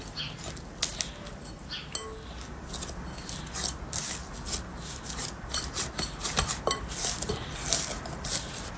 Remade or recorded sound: recorded